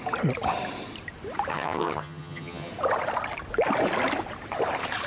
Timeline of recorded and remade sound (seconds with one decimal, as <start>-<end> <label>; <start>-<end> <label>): 0.0-1.5 recorded; 1.5-2.7 remade; 2.7-5.1 recorded